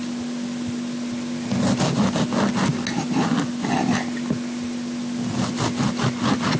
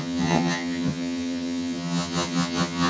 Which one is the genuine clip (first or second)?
first